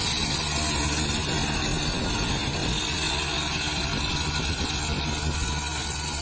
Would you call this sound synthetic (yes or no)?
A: no